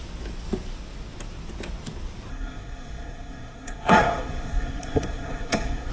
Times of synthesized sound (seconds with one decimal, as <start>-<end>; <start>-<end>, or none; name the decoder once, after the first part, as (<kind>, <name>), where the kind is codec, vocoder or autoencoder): 2.3-5.9 (codec, SNAC)